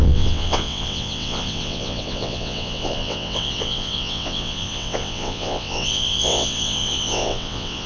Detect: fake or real fake